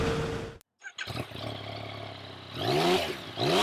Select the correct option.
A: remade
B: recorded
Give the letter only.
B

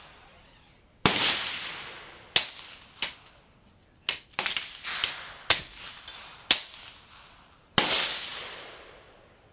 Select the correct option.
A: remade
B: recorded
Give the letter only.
B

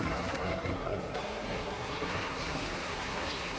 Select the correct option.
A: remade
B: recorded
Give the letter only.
A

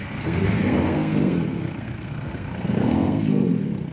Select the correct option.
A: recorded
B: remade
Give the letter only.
B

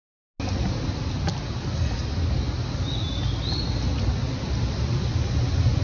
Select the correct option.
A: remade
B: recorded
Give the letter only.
B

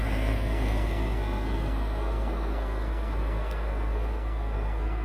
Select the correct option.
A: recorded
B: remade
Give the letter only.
B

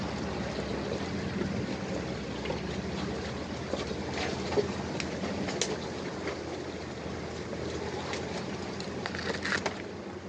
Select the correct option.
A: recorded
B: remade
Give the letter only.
A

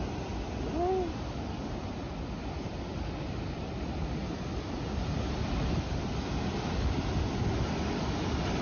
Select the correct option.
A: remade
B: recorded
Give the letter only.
B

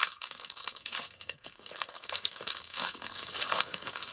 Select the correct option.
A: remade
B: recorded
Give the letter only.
A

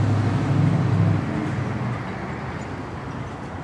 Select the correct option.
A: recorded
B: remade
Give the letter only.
A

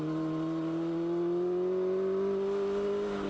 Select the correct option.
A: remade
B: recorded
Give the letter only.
B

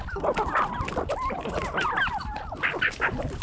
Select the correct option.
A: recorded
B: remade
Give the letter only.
A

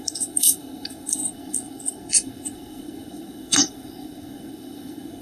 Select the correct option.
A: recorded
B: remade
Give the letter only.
B